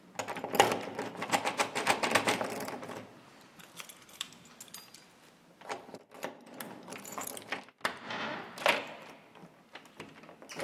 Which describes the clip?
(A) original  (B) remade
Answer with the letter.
A